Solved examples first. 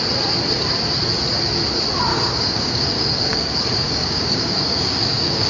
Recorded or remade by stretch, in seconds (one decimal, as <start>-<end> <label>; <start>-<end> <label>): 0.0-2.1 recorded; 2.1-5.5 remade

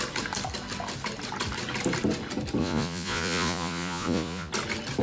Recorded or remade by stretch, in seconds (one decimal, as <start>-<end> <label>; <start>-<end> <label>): 0.0-2.6 recorded; 2.6-4.5 remade; 4.5-5.0 recorded

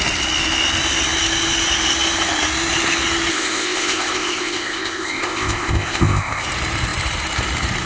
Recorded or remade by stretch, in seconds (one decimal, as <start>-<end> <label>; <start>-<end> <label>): 0.0-3.3 recorded; 3.3-6.4 remade; 6.4-7.9 recorded

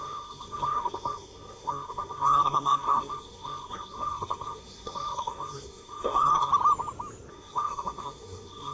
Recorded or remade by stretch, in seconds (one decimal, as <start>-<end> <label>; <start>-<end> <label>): 0.0-6.5 remade; 6.5-7.3 recorded; 7.3-8.7 remade

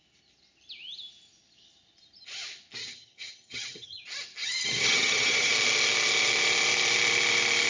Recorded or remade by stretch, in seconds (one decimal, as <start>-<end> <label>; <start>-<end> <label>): 0.0-2.8 recorded; 2.8-4.0 remade; 4.0-4.4 recorded; 4.4-5.5 remade; 5.5-7.7 recorded